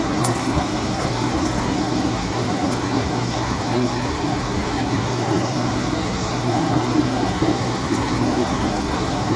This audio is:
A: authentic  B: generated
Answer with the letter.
B